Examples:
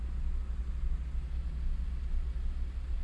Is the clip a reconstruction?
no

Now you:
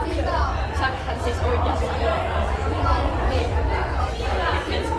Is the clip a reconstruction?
yes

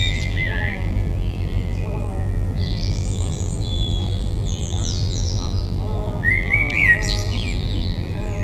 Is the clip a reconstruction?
yes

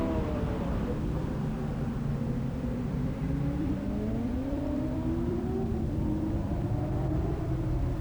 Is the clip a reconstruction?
yes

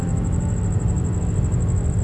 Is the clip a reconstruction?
no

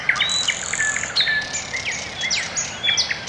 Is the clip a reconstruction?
no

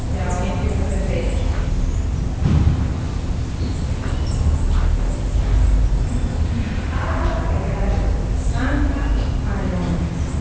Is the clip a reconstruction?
no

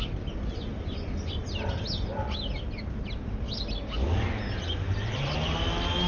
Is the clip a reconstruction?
no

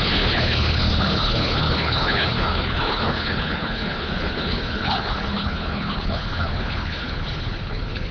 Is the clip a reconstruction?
yes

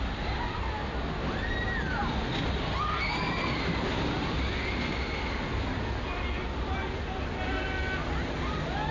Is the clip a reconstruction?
no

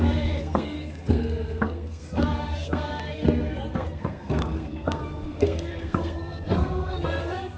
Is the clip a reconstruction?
yes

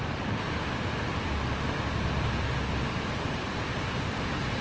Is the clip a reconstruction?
no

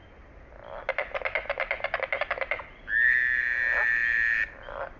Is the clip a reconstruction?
no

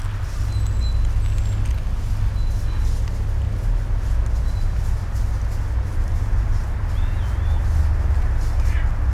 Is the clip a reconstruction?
no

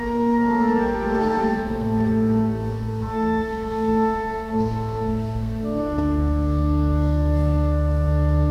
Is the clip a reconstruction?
yes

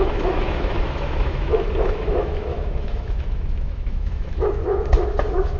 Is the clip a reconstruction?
yes